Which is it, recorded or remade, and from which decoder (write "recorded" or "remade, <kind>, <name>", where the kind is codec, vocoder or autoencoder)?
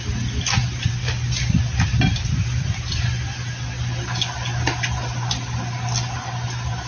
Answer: recorded